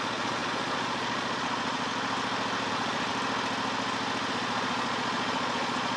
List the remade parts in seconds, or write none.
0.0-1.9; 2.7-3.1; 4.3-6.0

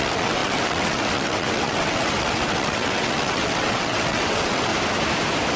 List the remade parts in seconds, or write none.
0.0-4.7